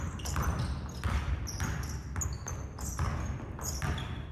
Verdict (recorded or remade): recorded